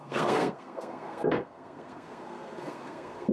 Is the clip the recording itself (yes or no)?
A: no